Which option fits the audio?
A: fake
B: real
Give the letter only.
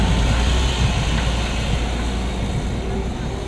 B